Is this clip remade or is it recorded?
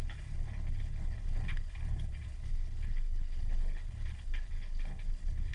remade